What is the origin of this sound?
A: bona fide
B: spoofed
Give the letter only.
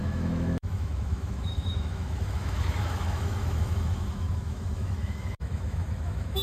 B